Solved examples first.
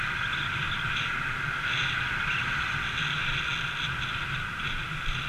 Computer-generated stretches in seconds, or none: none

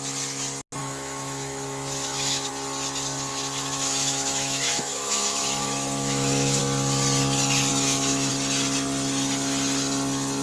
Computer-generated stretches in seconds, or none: 0.8-2.5 (autoencoder, DAC-VAE); 3.3-6.6; 7.7-8.3